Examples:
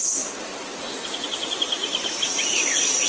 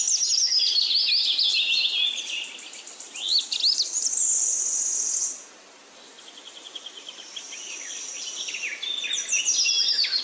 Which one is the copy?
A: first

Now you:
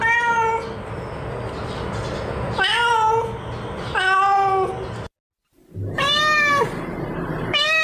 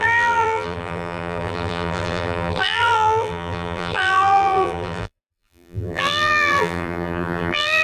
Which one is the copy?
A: second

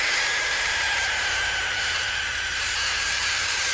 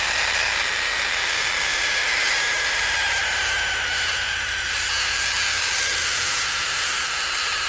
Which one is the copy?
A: first